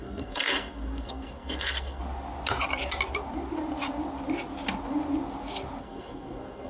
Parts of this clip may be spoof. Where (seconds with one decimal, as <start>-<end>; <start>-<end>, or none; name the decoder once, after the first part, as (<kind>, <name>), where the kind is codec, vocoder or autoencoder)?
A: 0.0-2.0 (codec, SNAC); 5.8-6.7